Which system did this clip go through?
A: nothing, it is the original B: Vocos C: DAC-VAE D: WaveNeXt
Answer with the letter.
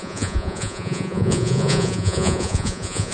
B